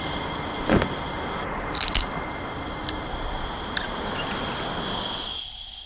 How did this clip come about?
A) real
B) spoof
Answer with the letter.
A